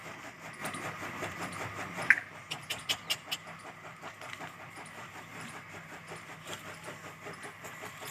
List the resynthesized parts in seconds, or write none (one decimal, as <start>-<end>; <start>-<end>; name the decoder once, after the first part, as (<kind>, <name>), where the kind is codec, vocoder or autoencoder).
5.3-6.1 (vocoder, BigVGAN v2)